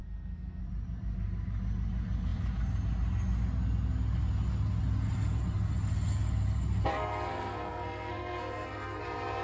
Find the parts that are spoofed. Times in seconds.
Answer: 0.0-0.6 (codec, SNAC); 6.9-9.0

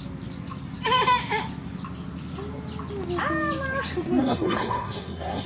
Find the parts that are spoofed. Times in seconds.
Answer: 4.2-5.5 (codec, SNAC)

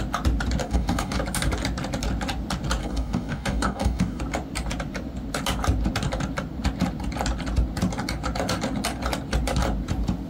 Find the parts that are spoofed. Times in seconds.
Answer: 0.6-1.2 (codec, DAC); 2.8-4.2

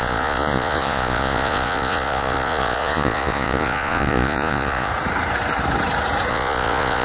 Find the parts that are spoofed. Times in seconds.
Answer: 0.0-4.9 (vocoder, Vocos); 6.3-7.0

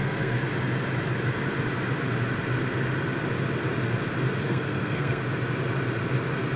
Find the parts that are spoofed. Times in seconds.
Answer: 0.0-0.4 (codec, SNAC); 4.4-5.2

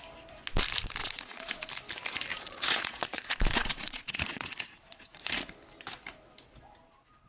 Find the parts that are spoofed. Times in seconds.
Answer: 1.0-1.7 (vocoder, Vocos); 2.3-5.2

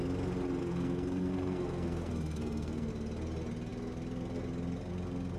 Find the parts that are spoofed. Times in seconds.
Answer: 0.6-2.9 (codec, SNAC)